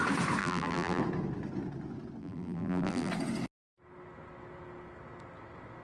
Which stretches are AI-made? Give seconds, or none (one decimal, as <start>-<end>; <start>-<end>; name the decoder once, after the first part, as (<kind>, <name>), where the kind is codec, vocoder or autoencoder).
0.4-1.0 (vocoder, BigVGAN v2); 2.2-3.1